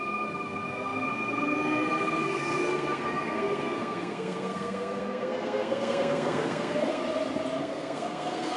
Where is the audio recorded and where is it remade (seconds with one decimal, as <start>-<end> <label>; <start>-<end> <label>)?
0.0-7.0 remade; 7.0-7.6 recorded; 7.6-8.6 remade